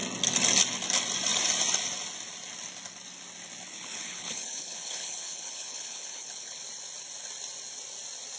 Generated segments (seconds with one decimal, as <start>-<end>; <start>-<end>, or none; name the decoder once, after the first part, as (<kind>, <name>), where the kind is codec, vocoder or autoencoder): 3.7-6.6 (codec, HILCodec)